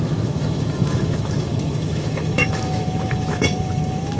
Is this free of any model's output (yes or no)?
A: no